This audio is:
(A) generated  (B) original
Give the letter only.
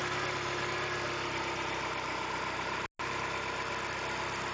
B